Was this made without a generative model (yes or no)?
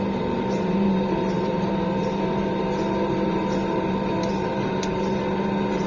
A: no